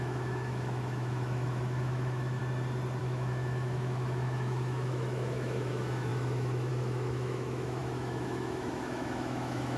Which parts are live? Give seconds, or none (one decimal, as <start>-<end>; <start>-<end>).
2.4-3.0